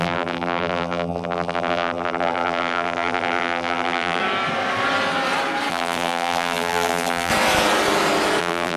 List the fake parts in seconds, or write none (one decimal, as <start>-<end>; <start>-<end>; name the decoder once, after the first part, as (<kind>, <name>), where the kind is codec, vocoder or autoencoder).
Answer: 0.0-4.2 (vocoder, BigVGAN v2); 5.7-7.3; 8.4-8.8